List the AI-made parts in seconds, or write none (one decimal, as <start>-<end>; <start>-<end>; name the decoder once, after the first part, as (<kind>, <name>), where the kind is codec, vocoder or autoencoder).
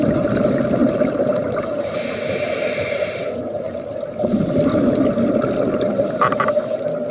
none